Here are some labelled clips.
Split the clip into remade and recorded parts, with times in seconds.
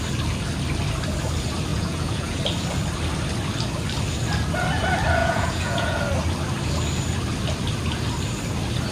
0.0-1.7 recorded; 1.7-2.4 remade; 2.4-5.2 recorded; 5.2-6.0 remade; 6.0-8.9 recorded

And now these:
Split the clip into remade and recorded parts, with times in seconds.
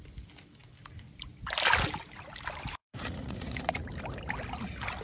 0.0-2.8 recorded; 2.8-3.9 remade; 3.9-5.0 recorded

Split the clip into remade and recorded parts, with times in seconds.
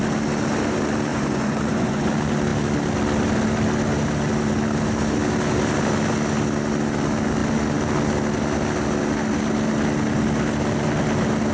0.0-1.1 recorded; 1.1-2.1 remade; 2.1-11.5 recorded